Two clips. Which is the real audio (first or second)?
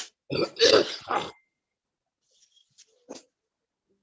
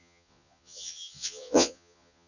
first